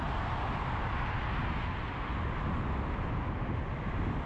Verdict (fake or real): real